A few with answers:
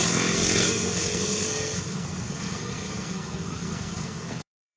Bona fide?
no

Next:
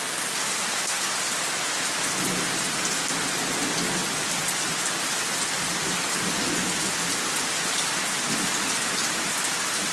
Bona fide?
yes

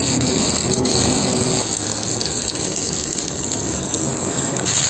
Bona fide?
no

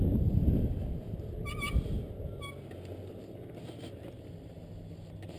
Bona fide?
yes